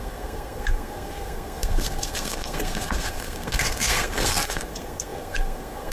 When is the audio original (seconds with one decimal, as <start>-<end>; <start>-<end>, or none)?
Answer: none